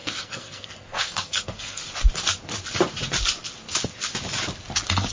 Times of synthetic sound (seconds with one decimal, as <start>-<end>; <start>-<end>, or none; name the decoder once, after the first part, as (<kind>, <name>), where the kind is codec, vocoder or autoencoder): 0.0-1.8 (codec, SNAC)